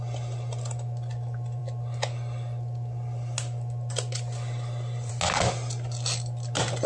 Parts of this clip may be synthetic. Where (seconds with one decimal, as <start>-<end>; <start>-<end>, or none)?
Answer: none